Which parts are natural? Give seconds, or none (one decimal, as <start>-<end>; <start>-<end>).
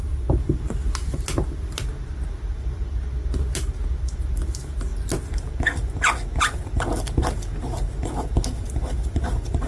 0.0-9.7